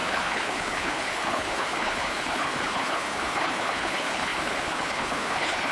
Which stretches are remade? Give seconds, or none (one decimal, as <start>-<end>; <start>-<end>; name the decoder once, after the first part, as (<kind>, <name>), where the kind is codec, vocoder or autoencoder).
0.0-5.7 (codec, HILCodec)